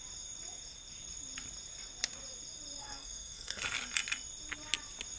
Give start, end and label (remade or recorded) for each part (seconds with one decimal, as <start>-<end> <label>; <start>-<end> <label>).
0.0-2.8 recorded; 2.8-3.6 remade; 3.6-5.2 recorded